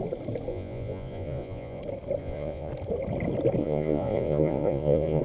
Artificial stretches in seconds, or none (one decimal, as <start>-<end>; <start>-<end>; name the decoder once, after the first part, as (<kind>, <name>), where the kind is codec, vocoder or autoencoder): 0.5-1.8 (vocoder, Vocos); 2.2-2.7; 3.6-5.2